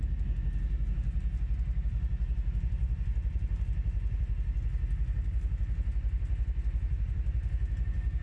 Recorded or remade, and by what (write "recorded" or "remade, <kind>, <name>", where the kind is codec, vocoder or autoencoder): recorded